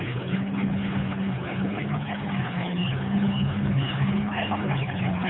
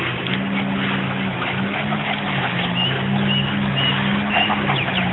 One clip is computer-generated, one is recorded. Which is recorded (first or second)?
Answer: second